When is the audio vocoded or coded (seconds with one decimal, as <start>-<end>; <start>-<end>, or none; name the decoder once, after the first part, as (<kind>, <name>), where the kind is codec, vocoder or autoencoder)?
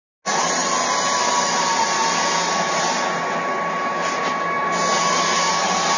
none